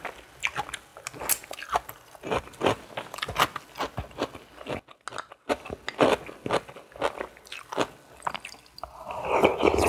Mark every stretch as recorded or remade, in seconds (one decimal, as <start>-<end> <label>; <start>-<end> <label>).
0.0-9.9 recorded